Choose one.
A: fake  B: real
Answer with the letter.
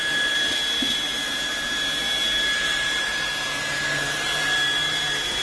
B